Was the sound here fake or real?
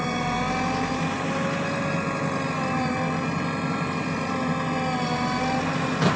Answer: real